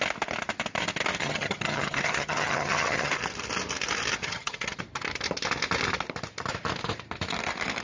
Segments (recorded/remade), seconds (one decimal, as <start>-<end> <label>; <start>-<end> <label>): 0.0-1.2 recorded; 1.2-3.1 remade; 3.1-4.2 recorded; 4.2-4.8 remade; 4.8-7.8 recorded